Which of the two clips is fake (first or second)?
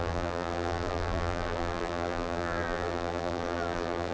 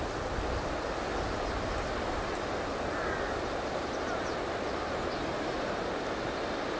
first